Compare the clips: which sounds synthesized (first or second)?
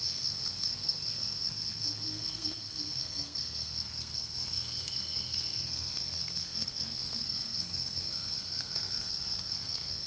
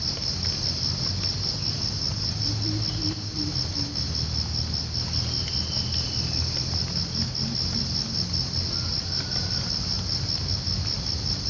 first